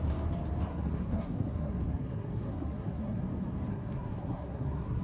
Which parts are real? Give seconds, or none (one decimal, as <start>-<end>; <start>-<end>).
0.0-0.7; 3.2-3.7